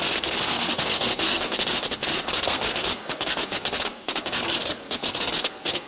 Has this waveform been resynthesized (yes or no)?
yes